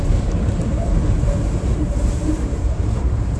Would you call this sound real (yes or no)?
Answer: no